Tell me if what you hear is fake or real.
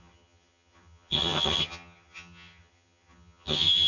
fake